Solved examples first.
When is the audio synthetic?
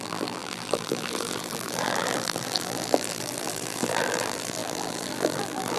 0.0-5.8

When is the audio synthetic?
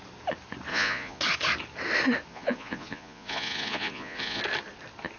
0.7-1.2; 2.3-4.4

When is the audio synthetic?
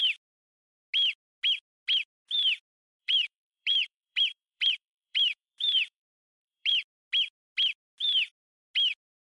3.0-6.7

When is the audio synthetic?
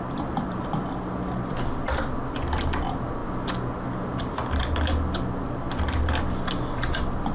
none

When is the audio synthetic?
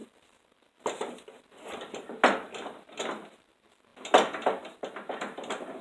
none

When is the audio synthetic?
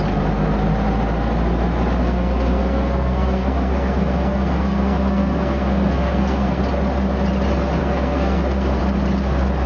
2.0-6.6; 7.8-8.8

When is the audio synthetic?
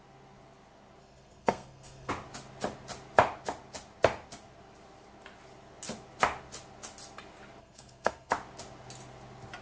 1.0-2.1; 7.6-8.3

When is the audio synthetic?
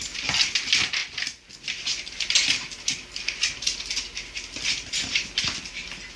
1.9-5.6